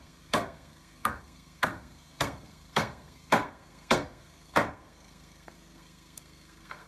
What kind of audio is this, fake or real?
fake